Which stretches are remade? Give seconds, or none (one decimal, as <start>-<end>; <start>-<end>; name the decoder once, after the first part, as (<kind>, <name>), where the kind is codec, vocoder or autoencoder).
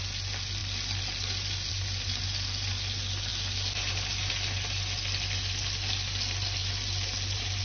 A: 6.6-7.6 (vocoder, BigVGAN v2)